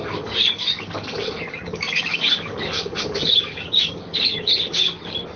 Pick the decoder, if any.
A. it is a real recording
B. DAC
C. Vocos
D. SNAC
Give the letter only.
B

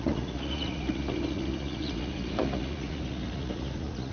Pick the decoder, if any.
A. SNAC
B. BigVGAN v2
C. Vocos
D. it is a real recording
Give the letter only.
C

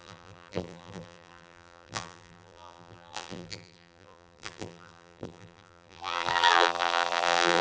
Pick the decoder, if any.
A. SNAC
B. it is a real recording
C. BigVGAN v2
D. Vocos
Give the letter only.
C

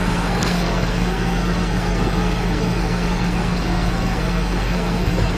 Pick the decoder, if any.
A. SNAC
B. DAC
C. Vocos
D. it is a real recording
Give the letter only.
A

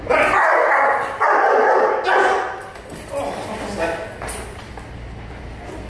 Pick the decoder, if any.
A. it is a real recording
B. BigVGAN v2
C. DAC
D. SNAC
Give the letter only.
A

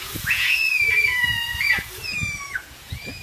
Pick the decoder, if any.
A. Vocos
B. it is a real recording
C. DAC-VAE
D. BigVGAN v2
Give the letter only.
A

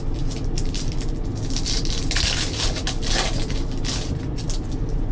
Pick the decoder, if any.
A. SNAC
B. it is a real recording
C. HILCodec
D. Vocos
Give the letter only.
B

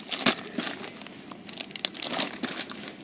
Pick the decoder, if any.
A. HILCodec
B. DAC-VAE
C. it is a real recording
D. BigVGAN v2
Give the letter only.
C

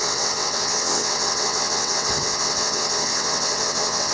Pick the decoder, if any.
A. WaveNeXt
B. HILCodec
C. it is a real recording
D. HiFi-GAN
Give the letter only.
A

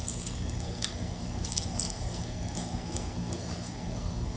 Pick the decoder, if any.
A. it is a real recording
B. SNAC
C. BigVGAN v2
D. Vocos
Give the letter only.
B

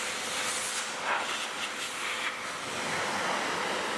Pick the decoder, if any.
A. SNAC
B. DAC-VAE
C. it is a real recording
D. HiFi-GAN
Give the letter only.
C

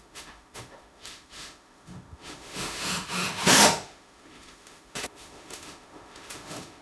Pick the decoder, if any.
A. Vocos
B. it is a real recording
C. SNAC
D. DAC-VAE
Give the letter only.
D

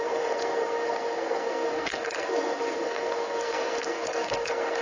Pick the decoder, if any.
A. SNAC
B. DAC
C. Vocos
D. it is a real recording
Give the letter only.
A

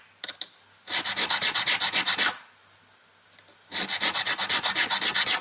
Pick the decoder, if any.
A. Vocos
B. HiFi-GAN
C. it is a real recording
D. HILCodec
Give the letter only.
C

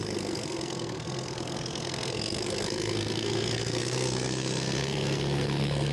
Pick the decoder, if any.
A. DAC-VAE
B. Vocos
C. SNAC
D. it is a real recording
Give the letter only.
C